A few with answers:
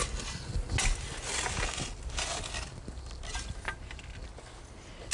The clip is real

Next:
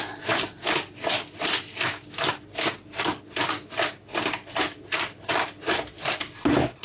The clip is real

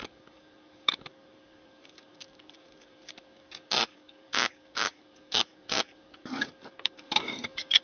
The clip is fake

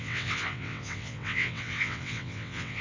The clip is fake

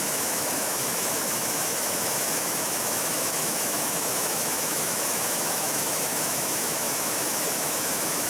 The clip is fake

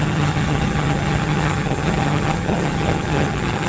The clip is fake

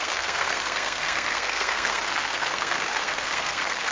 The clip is fake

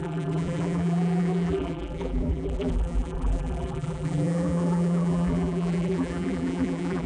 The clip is fake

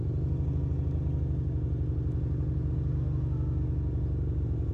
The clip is real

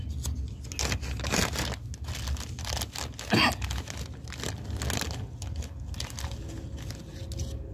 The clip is real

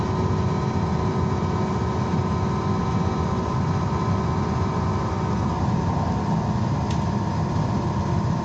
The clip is real